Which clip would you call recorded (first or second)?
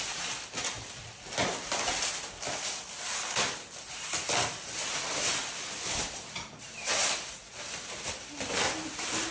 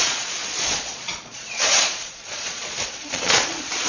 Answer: first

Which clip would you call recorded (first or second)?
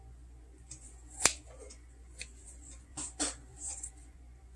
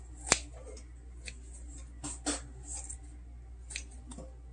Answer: second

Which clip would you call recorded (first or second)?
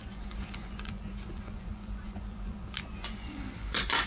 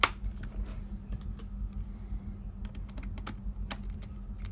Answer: second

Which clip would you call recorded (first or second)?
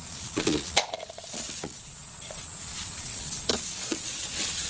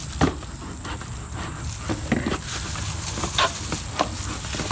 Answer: second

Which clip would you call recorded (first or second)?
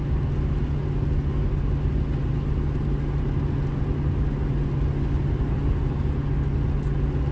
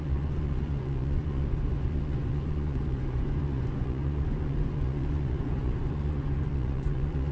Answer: first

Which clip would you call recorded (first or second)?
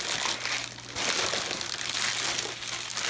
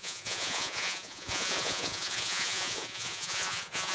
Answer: first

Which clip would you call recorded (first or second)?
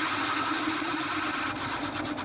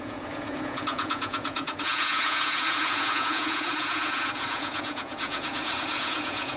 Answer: first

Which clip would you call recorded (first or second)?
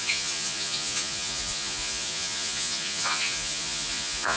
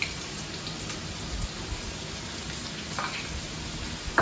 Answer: second